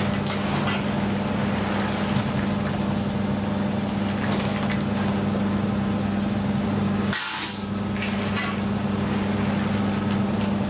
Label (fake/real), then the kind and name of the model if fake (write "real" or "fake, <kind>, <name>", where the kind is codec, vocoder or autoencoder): real